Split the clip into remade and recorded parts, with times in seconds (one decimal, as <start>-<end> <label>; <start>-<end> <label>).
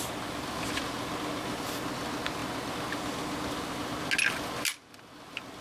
0.0-5.6 recorded